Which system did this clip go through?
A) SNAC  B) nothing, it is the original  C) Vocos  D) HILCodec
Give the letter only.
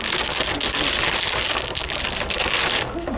B